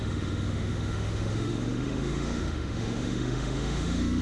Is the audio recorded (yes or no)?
no